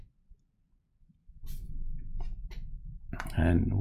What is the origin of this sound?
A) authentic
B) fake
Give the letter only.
A